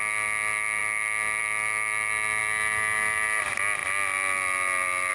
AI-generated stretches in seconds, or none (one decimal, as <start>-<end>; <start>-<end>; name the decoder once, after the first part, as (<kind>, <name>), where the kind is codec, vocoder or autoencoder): none